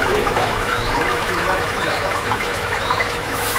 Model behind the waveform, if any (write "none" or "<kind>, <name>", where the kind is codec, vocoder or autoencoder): autoencoder, DAC-VAE